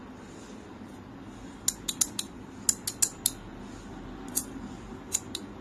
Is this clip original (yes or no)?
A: yes